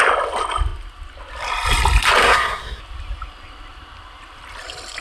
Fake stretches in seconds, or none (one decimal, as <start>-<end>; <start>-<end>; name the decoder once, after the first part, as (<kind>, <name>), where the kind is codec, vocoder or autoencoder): 2.2-2.8 (codec, SNAC)